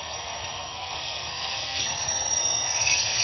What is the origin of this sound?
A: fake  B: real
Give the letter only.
A